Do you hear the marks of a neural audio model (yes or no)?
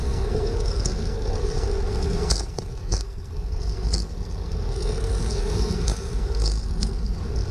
yes